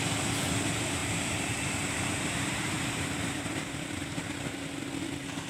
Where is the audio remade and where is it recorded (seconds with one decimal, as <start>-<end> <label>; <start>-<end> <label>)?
0.0-1.0 recorded; 1.0-4.3 remade; 4.3-5.5 recorded